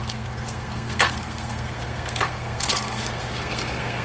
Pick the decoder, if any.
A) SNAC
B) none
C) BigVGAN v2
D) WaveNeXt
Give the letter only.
A